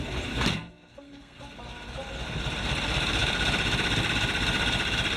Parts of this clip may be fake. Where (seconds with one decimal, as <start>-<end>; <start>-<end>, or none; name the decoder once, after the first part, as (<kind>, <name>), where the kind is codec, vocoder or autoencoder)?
0.5-1.4 (codec, SNAC)

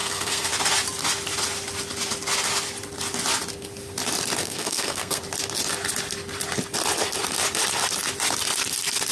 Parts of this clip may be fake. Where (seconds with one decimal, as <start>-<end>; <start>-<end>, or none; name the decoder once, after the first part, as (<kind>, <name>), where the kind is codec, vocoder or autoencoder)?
0.0-0.5 (codec, SNAC); 4.4-5.2